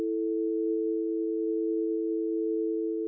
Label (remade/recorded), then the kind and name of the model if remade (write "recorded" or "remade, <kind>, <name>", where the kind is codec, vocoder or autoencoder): remade, codec, SNAC